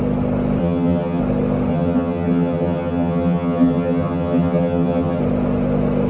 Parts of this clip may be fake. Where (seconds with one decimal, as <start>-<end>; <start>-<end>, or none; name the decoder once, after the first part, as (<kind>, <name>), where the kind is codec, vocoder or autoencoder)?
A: 0.6-1.2 (vocoder, HiFi-GAN); 1.7-5.2